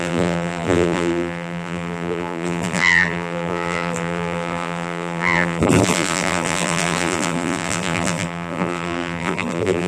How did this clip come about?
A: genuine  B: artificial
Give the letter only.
B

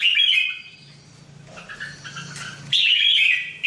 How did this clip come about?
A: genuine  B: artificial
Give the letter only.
A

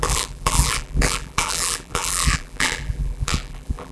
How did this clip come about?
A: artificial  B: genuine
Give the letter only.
A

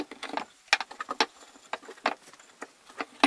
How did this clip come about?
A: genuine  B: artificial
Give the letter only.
A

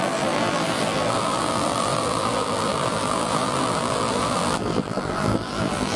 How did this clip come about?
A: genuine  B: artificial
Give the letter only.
B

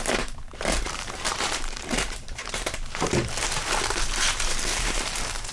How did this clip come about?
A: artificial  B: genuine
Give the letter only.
A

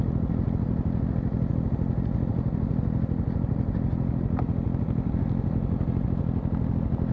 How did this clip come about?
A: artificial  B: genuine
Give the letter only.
B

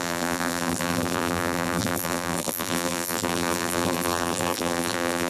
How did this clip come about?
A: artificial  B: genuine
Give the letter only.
A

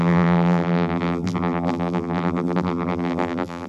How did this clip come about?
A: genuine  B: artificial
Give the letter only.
B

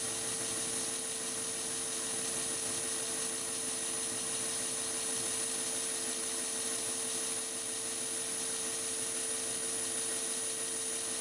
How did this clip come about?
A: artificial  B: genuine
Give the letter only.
B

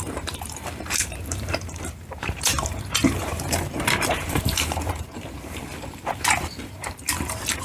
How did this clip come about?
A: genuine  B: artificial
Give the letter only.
B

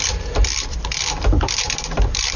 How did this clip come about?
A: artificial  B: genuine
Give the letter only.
A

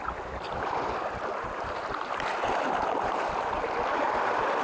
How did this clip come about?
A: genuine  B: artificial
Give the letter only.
B